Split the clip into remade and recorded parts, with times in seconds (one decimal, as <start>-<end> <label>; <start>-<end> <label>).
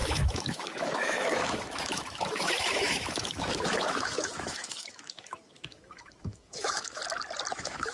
0.0-7.0 remade; 7.0-7.5 recorded; 7.5-7.9 remade